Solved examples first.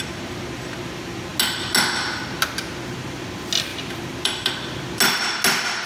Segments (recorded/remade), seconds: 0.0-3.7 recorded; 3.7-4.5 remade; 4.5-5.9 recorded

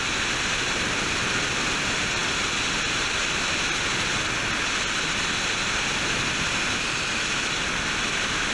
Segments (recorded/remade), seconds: 0.0-8.5 recorded

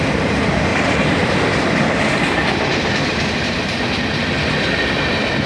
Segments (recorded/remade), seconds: 0.0-0.7 recorded; 0.7-4.0 remade; 4.0-5.5 recorded